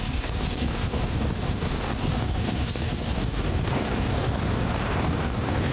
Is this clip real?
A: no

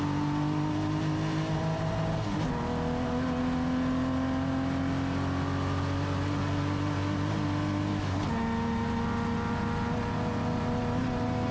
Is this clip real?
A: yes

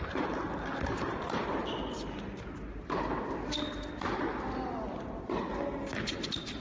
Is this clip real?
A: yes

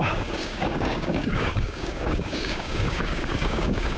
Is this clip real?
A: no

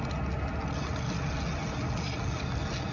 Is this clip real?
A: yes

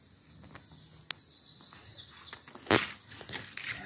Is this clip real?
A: yes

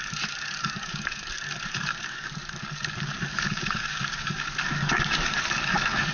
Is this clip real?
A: no